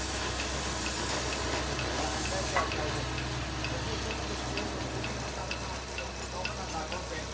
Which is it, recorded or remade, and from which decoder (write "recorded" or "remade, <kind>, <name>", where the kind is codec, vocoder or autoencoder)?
recorded